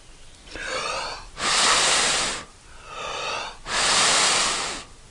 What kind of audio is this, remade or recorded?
recorded